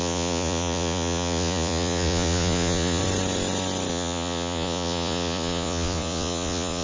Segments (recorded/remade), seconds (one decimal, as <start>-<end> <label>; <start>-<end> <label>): 0.0-3.0 remade; 3.0-3.9 recorded; 3.9-6.8 remade